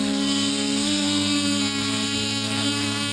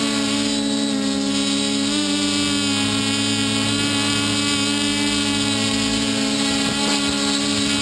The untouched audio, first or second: second